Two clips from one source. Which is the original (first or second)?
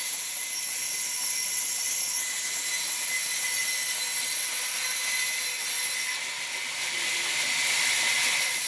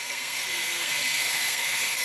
first